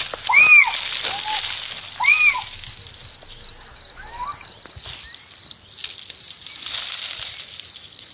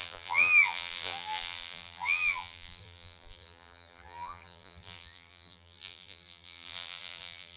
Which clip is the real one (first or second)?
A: first